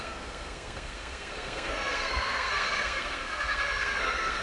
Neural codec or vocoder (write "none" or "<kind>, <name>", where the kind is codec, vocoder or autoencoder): codec, SNAC